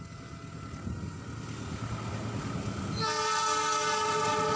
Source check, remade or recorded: recorded